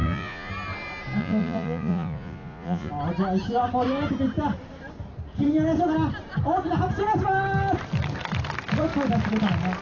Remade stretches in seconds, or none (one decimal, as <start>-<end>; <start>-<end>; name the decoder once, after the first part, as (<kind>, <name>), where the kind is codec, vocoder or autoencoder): 0.0-0.5 (vocoder, Vocos); 1.2-2.9